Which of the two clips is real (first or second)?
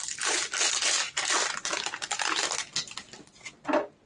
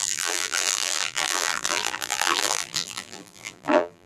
first